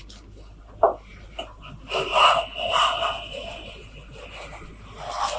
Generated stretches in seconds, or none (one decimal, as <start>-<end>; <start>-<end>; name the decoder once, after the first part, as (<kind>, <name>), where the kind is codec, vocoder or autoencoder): none